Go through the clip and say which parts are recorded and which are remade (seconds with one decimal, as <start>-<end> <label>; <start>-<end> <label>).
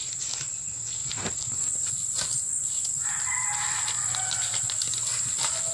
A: 0.0-5.7 recorded